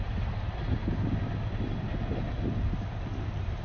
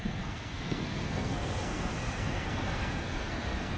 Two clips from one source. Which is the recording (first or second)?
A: first